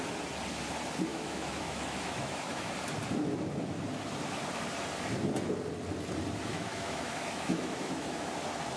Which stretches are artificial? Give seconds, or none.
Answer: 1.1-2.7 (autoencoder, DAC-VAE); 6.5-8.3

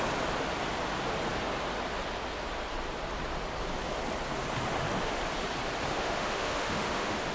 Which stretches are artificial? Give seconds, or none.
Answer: 5.9-7.3 (autoencoder, DAC-VAE)

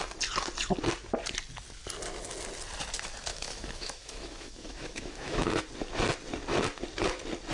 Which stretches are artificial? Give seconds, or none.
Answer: 3.3-5.6 (autoencoder, DAC-VAE)

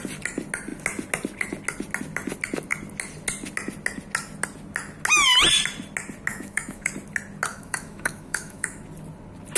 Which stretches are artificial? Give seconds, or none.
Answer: 6.3-6.9 (autoencoder, DAC-VAE); 7.5-8.8

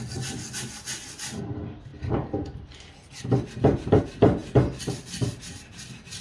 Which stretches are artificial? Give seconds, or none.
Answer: none